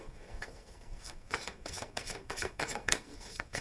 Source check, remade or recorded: remade